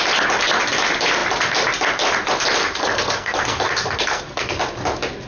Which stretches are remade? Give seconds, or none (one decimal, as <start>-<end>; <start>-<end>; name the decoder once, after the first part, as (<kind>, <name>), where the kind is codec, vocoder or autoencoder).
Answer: 2.6-4.6 (codec, SNAC)